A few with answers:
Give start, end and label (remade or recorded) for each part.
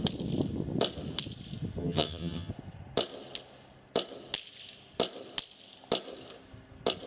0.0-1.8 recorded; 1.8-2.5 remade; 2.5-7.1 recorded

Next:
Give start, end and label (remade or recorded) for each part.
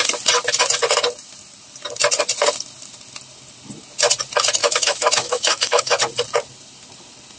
0.0-4.6 recorded; 4.6-6.0 remade; 6.0-7.4 recorded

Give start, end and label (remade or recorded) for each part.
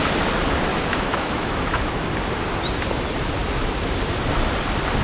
0.0-0.7 recorded; 0.7-2.1 remade; 2.1-5.0 recorded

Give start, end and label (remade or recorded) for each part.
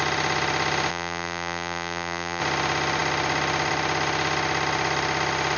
0.0-0.9 recorded; 0.9-2.4 remade; 2.4-5.6 recorded